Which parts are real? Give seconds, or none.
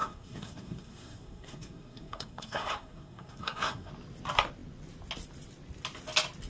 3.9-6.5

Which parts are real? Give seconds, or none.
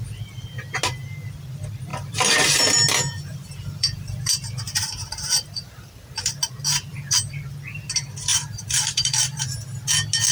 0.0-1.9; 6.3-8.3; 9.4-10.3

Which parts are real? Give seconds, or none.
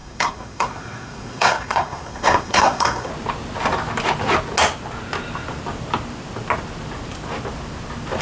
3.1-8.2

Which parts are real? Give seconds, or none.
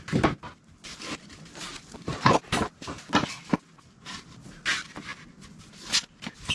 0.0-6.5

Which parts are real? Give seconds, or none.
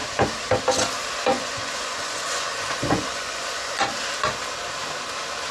0.0-1.3; 3.9-5.5